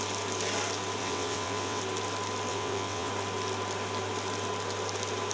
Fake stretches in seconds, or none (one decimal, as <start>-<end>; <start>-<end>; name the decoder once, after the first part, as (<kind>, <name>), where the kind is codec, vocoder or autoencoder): 1.0-1.8 (vocoder, WaveNeXt); 2.5-3.1